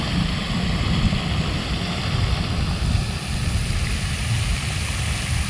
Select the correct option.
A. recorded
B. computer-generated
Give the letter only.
A